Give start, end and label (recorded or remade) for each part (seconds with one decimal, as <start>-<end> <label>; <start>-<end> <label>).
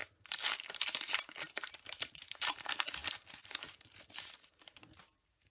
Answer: 0.0-0.7 recorded; 0.7-5.5 remade